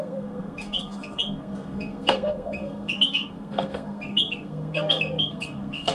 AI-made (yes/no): yes